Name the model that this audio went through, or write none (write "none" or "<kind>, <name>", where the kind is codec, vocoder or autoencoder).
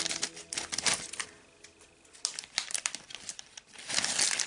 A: none